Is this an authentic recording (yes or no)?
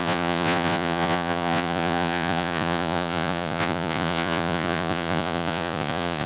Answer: no